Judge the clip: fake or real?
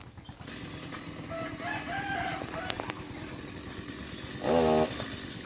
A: real